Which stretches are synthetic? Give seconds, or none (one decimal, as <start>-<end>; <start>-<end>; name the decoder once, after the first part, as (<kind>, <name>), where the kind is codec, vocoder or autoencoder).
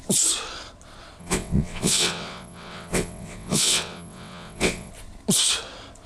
1.2-4.9 (vocoder, WaveNeXt)